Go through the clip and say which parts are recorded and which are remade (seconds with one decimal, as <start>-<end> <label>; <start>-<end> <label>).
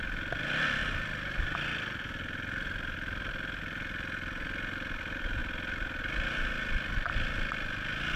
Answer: 0.0-8.2 recorded